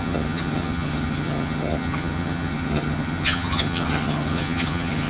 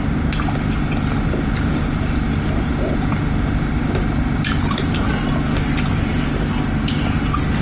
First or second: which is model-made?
first